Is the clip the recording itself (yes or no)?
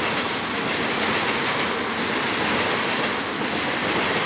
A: yes